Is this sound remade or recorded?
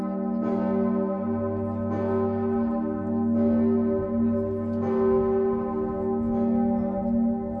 recorded